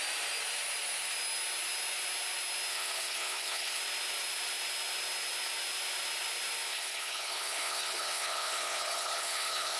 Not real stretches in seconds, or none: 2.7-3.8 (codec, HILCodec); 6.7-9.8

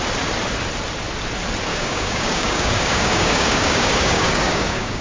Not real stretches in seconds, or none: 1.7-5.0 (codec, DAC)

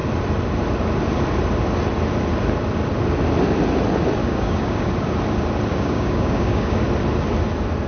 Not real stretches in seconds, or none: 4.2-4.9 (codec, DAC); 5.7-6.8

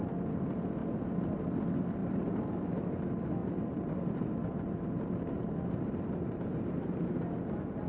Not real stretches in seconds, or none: 2.0-2.8 (vocoder, BigVGAN v2); 3.4-7.2